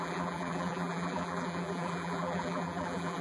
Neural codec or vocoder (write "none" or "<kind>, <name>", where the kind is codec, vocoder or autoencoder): vocoder, BigVGAN v2